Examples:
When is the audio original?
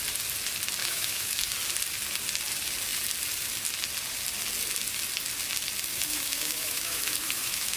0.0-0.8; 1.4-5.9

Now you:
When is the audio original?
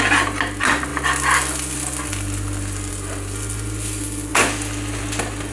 0.0-5.5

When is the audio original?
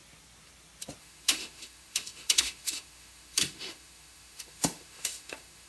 0.0-1.0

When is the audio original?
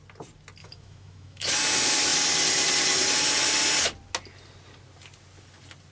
0.0-0.6; 1.5-5.9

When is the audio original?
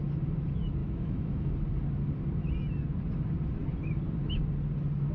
0.0-0.8; 1.5-5.1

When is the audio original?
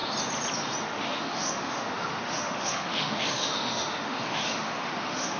0.0-0.8